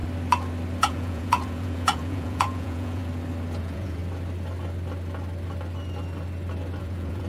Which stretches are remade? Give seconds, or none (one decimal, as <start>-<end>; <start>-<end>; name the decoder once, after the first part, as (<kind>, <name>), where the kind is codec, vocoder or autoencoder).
0.8-3.0 (vocoder, Vocos); 3.6-4.0; 6.8-7.3